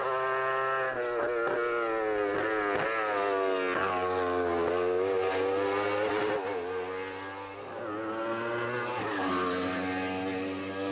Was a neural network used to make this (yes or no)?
no